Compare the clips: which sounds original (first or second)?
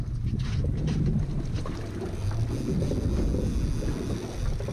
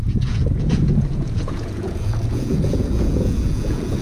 first